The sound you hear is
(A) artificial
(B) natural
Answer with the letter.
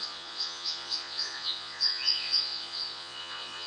A